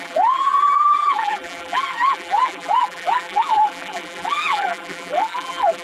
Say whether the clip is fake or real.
fake